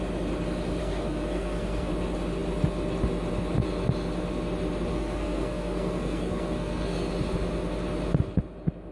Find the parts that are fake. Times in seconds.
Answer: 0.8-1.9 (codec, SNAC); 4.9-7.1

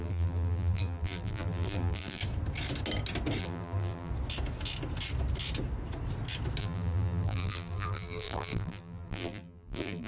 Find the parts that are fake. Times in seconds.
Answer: 0.0-2.2 (vocoder, BigVGAN v2); 3.4-4.1; 6.6-10.1

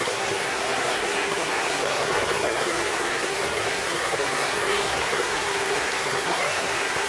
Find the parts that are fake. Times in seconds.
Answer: 0.0-7.1 (codec, SNAC)

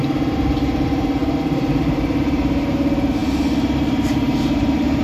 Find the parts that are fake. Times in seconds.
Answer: 0.0-1.2 (vocoder, BigVGAN v2); 1.9-5.0

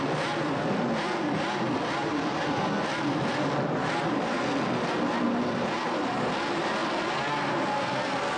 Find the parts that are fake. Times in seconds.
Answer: 0.0-6.8 (vocoder, BigVGAN v2); 7.6-8.4

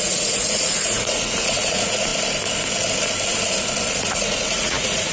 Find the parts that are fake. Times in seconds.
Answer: 0.0-2.1 (vocoder, Vocos); 3.9-5.1

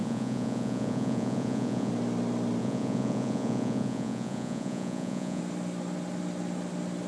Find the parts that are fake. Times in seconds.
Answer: 0.0-1.9 (vocoder, Vocos); 2.6-5.4